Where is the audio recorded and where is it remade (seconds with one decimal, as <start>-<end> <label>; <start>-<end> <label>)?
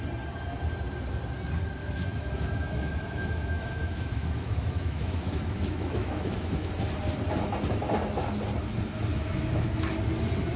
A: 0.0-1.8 recorded; 1.8-6.7 remade; 6.7-9.1 recorded; 9.1-9.9 remade; 9.9-10.6 recorded